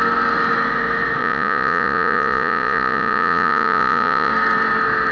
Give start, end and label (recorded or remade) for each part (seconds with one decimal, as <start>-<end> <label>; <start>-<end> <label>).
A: 0.0-1.2 recorded; 1.2-4.3 remade; 4.3-5.1 recorded